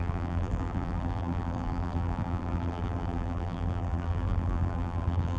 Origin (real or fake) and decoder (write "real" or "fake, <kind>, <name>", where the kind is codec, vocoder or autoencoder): fake, vocoder, BigVGAN v2